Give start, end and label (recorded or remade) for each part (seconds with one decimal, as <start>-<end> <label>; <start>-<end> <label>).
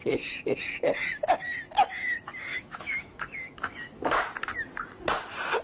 0.0-0.6 remade; 0.6-2.5 recorded; 2.5-4.2 remade; 4.2-5.6 recorded